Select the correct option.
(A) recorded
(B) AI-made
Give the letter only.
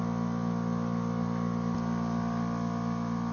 A